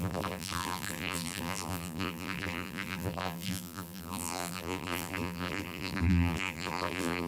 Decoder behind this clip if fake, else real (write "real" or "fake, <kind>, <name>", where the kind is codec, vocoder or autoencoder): fake, vocoder, BigVGAN v2